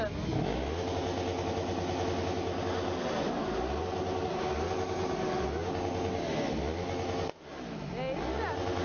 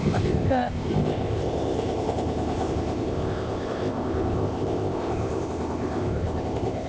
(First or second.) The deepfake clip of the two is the second